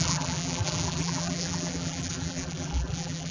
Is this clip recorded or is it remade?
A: remade